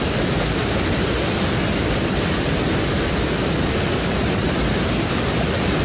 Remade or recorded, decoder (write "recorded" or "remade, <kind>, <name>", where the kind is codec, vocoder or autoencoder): recorded